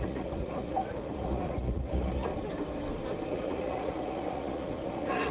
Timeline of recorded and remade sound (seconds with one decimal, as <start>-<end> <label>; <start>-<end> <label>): 0.0-2.3 remade; 2.3-3.3 recorded; 3.3-5.3 remade